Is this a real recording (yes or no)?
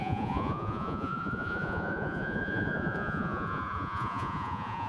no